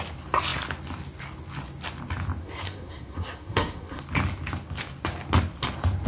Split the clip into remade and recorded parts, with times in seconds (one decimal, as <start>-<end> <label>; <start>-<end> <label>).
0.0-2.4 recorded; 2.4-4.0 remade; 4.0-6.1 recorded